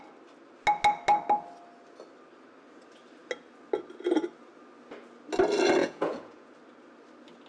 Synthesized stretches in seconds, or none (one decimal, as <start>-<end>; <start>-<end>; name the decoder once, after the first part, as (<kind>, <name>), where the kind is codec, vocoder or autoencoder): 5.8-6.5 (vocoder, Vocos)